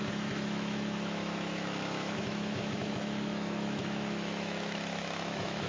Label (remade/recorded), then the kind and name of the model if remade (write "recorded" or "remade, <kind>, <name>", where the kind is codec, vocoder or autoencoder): remade, autoencoder, DAC-VAE